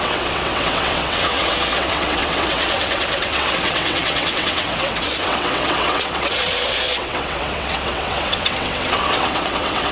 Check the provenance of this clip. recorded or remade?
remade